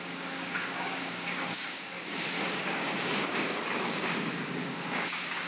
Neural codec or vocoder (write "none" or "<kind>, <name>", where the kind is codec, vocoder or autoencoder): codec, DAC